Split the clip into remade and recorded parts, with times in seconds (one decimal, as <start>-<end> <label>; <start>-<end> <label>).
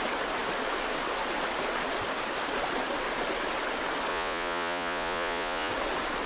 0.0-4.1 recorded; 4.1-5.7 remade; 5.7-6.3 recorded